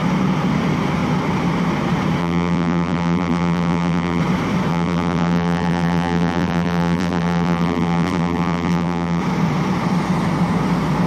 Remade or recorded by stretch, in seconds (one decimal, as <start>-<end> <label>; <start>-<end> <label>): 0.0-2.2 recorded; 2.2-4.2 remade; 4.2-4.7 recorded; 4.7-9.2 remade; 9.2-11.1 recorded